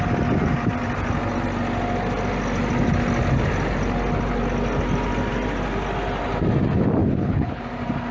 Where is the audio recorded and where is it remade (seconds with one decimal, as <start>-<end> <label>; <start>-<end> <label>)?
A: 0.0-7.0 recorded; 7.0-7.6 remade; 7.6-8.1 recorded

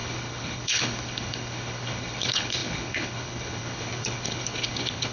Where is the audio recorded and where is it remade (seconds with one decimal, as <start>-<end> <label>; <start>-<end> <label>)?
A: 0.0-5.1 remade